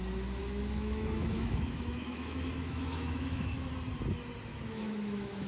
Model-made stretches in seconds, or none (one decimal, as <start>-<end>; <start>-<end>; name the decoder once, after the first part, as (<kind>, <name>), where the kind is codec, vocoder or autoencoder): 0.4-3.7 (autoencoder, DAC-VAE); 4.5-5.5